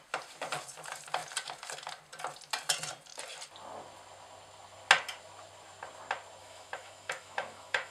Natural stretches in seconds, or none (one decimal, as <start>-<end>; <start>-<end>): 0.0-6.4